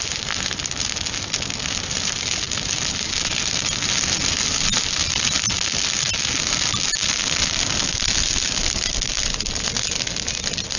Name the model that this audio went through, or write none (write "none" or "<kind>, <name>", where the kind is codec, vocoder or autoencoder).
none